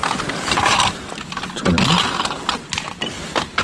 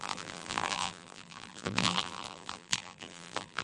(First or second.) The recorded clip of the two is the first